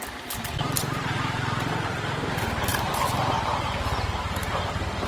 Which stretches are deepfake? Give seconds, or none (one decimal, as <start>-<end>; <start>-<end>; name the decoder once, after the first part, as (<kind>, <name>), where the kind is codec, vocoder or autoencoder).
0.8-1.4 (vocoder, BigVGAN v2); 2.7-5.1